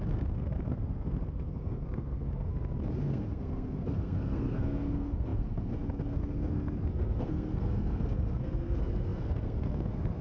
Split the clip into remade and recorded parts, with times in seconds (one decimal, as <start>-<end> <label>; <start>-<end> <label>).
0.0-2.5 remade; 2.5-3.0 recorded; 3.0-10.2 remade